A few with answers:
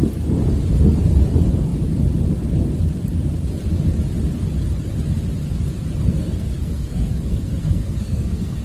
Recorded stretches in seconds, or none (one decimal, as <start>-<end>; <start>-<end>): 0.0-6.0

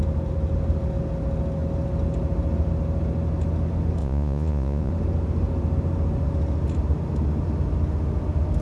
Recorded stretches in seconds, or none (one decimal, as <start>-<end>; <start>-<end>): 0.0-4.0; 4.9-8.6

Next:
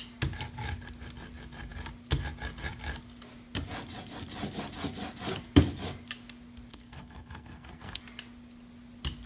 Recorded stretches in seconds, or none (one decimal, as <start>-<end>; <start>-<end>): 0.0-6.7; 8.0-9.3

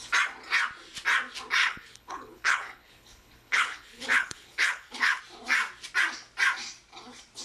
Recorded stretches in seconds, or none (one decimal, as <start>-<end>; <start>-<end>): 0.0-1.6; 5.2-7.4